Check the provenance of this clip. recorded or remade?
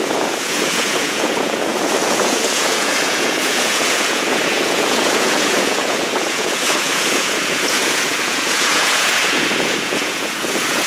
remade